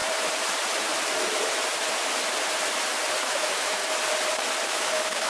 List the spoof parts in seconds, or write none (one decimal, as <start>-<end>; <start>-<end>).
3.2-3.8; 4.7-5.3